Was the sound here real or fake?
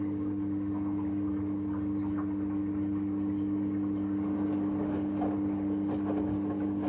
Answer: real